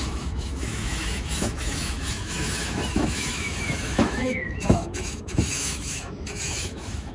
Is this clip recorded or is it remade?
remade